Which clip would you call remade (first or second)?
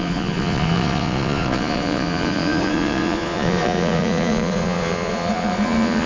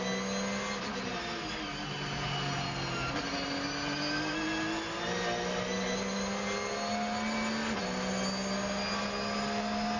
first